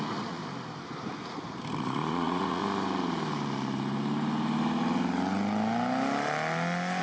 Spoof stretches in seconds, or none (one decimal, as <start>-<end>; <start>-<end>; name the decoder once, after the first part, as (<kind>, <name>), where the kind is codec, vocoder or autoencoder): 0.0-0.4 (vocoder, Vocos); 1.8-2.6